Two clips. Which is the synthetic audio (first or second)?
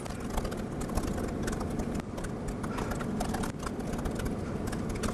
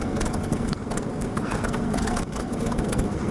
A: second